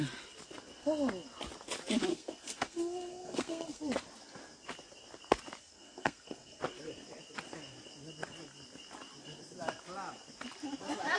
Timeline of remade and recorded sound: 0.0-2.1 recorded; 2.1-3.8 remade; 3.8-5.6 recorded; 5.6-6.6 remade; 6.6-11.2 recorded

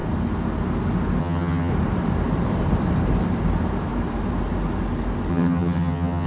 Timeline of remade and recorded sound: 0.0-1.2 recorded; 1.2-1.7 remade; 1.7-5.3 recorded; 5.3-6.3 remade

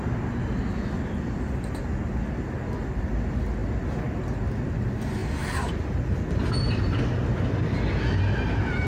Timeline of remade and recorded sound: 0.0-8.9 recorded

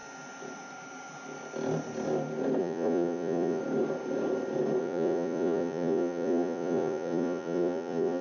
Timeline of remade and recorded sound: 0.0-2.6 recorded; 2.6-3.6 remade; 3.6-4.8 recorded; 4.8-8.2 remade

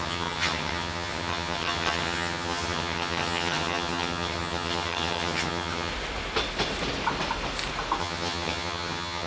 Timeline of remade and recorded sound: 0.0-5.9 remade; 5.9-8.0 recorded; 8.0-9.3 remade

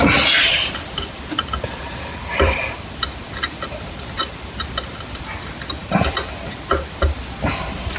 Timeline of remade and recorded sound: 0.0-0.4 recorded; 0.4-5.2 remade; 5.2-5.8 recorded; 5.8-6.5 remade; 6.5-8.0 recorded

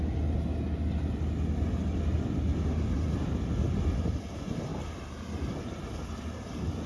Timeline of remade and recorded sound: 0.0-4.7 recorded; 4.7-5.3 remade; 5.3-6.9 recorded